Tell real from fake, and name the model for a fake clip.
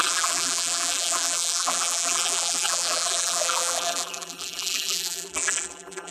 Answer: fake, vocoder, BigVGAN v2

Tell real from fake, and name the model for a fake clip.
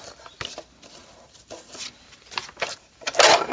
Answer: real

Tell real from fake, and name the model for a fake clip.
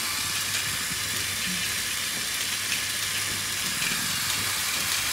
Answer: real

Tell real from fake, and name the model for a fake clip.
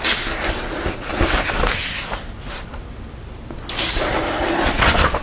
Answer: real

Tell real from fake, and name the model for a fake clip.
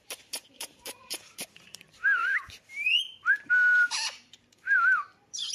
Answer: fake, vocoder, BigVGAN v2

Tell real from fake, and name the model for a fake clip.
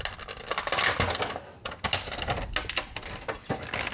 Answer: real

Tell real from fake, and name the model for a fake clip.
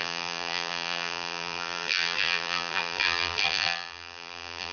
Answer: fake, vocoder, BigVGAN v2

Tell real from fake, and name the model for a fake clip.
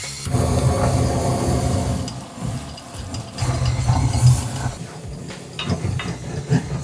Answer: real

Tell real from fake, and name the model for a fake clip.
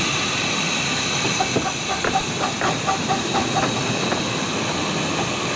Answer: fake, vocoder, BigVGAN v2